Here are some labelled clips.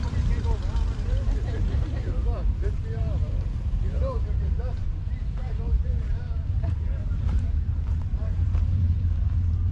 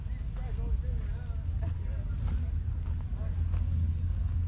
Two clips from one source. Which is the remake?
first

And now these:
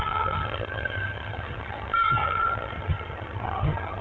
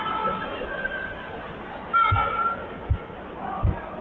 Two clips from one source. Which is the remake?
first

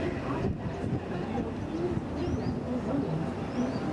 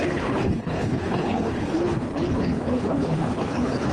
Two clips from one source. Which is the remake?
second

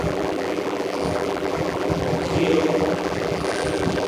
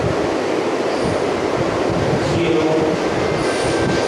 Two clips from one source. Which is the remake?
first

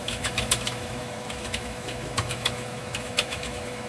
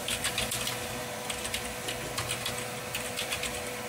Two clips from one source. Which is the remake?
first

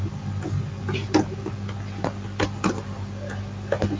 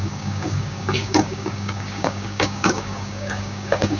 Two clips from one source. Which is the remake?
second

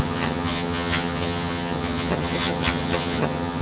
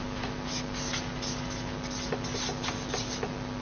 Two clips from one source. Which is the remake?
first